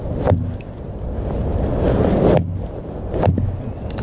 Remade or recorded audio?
recorded